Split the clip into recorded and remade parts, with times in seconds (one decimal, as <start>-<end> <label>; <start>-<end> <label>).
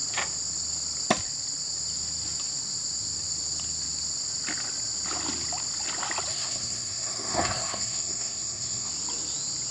0.0-6.3 recorded; 6.3-8.9 remade; 8.9-9.7 recorded